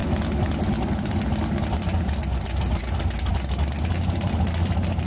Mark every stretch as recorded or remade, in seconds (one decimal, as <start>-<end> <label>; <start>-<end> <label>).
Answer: 0.0-5.1 recorded